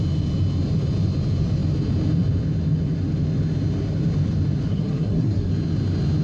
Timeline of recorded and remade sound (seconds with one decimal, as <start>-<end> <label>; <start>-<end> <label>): 0.0-4.7 recorded; 4.7-5.5 remade; 5.5-6.2 recorded